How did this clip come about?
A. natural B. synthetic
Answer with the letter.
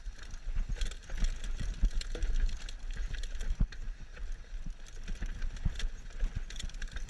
A